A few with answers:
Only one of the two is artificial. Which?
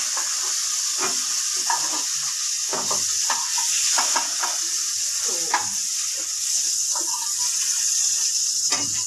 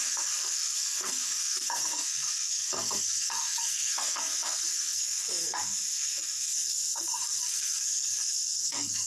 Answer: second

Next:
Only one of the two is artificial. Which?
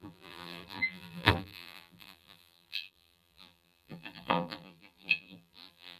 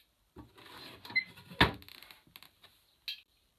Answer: first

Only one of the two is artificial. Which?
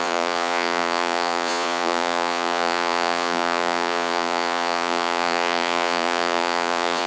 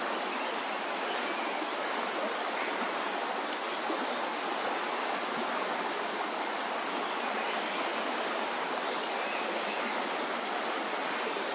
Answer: first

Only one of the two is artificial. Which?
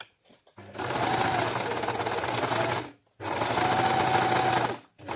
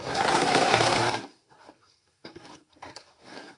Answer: second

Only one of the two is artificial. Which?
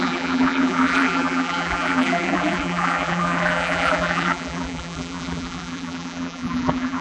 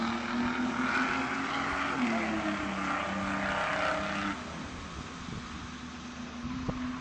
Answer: first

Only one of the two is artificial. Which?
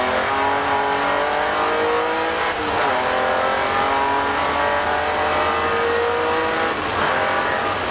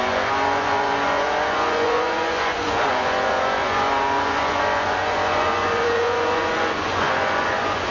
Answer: second